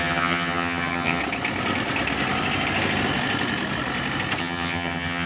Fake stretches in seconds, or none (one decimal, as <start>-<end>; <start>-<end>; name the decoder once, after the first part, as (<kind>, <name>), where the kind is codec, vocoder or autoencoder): 0.0-1.2 (vocoder, HiFi-GAN); 4.4-5.3